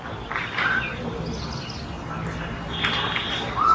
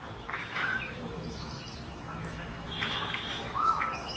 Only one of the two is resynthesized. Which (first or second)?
second